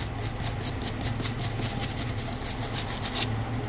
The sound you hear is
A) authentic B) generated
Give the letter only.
A